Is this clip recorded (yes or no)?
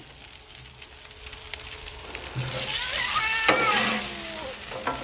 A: yes